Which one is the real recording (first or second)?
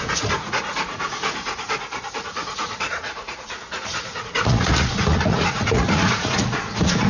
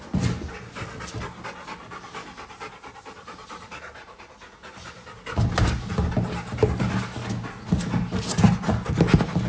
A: second